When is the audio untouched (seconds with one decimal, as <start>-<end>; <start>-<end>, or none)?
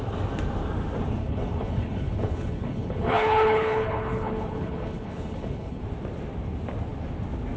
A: 0.0-1.2; 5.8-7.6